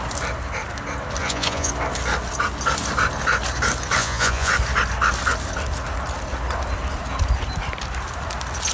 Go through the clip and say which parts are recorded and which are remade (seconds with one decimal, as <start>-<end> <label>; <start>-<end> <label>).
0.0-1.2 recorded; 1.2-1.7 remade; 1.7-4.0 recorded; 4.0-4.5 remade; 4.5-8.7 recorded